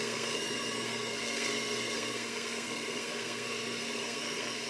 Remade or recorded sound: remade